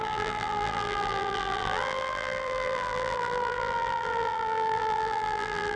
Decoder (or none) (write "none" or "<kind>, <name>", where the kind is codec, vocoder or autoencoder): vocoder, BigVGAN v2